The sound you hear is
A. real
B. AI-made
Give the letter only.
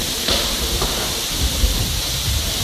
B